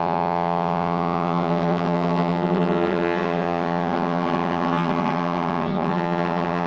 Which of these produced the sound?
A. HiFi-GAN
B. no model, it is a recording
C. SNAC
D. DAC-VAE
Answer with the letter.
A